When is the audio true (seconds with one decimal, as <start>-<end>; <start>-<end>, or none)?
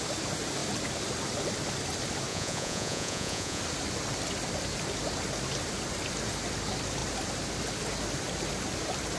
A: 0.0-2.3; 3.6-9.2